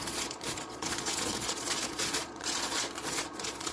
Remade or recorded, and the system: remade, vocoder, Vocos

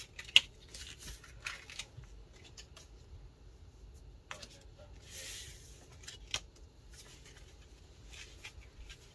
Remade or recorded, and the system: recorded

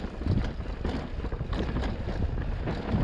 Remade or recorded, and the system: recorded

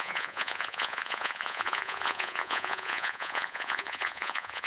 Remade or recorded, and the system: remade, vocoder, Vocos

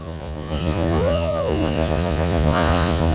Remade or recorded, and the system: remade, vocoder, Vocos